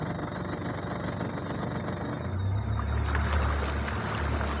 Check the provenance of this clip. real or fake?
real